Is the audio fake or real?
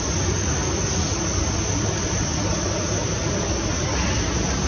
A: real